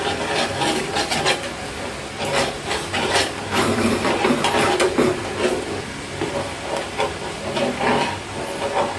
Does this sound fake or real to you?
fake